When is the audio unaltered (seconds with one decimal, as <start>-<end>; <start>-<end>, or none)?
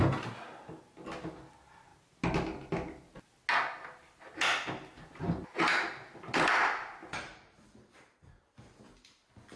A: 0.0-7.0; 8.3-9.6